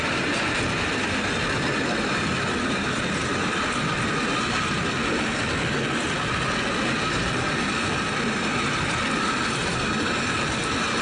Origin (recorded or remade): recorded